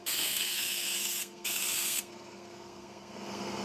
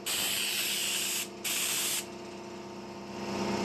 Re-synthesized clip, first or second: first